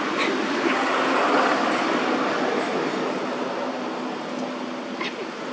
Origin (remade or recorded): recorded